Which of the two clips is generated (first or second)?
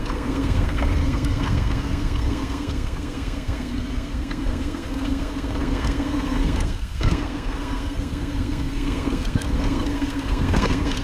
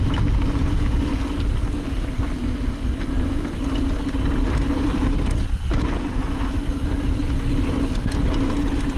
first